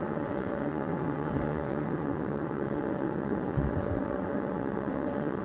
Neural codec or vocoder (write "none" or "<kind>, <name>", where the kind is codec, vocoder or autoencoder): vocoder, WaveNeXt